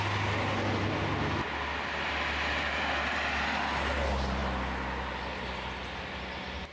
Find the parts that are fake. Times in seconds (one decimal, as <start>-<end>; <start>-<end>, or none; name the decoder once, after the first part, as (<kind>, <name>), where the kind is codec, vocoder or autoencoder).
none